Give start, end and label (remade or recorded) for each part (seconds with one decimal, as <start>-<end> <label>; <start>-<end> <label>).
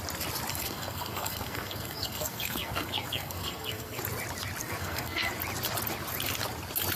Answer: 0.0-0.5 recorded; 0.5-4.0 remade; 4.0-4.6 recorded; 4.6-5.3 remade; 5.3-7.0 recorded